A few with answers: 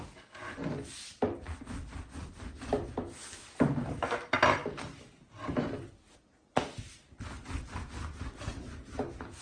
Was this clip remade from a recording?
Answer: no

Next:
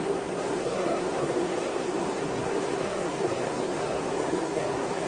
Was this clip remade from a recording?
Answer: yes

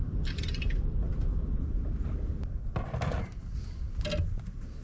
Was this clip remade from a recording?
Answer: no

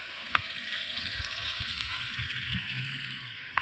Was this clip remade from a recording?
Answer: yes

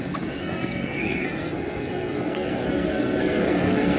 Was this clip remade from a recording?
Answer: yes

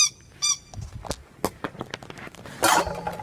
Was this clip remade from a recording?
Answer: no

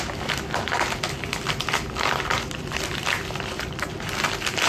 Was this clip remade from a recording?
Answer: no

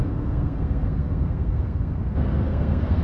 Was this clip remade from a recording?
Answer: yes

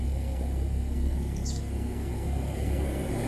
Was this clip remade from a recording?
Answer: yes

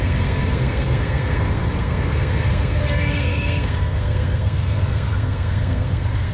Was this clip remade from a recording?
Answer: yes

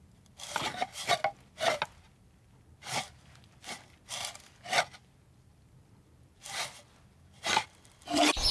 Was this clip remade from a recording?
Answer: no